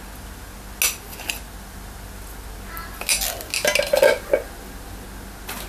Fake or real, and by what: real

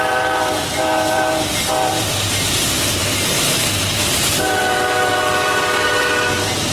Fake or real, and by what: fake, vocoder, BigVGAN v2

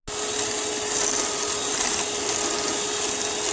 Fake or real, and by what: real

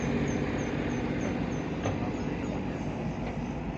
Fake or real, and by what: real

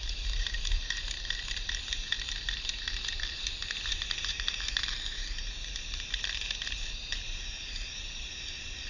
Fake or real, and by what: fake, vocoder, BigVGAN v2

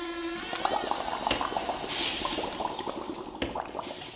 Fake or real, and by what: real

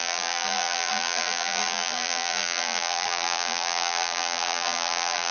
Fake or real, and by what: fake, vocoder, BigVGAN v2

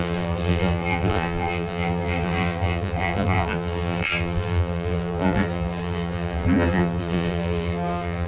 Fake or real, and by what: fake, vocoder, BigVGAN v2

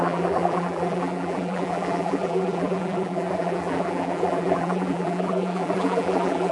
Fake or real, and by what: fake, vocoder, BigVGAN v2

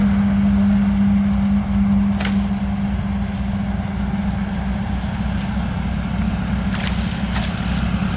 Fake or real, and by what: real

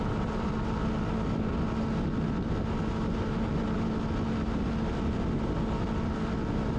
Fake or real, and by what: real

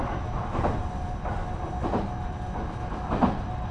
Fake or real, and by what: real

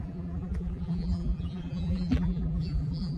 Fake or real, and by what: fake, vocoder, BigVGAN v2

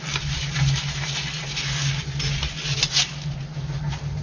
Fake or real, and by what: real